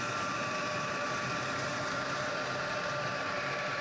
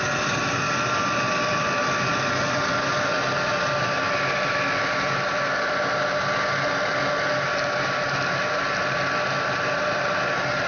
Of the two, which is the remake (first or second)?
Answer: first